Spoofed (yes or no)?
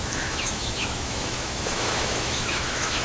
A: yes